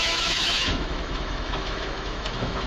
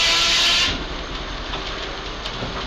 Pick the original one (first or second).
second